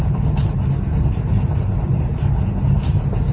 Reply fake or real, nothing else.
real